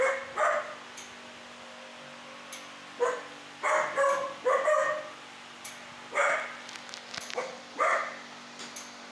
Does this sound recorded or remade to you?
recorded